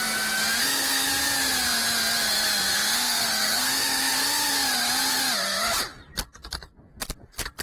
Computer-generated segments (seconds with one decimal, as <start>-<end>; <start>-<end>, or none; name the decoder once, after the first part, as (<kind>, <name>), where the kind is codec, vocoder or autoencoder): 0.6-1.1 (codec, SNAC); 2.7-4.1